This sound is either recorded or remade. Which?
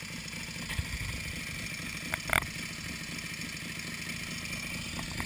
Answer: recorded